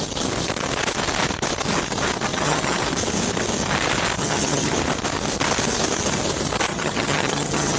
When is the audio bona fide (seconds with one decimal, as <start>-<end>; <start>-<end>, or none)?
0.0-2.3; 2.8-4.2; 4.7-6.7